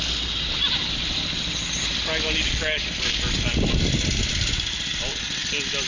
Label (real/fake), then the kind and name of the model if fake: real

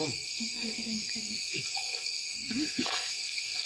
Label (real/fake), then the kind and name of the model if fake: fake, codec, SNAC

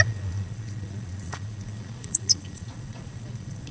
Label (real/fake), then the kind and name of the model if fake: fake, vocoder, Vocos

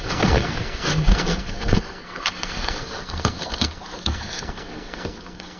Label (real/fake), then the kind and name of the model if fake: fake, codec, SNAC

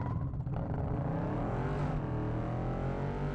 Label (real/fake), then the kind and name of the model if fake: real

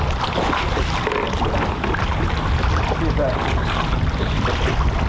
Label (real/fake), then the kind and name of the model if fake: real